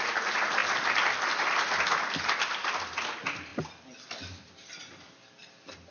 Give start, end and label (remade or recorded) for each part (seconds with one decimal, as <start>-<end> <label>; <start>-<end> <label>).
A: 0.0-5.9 recorded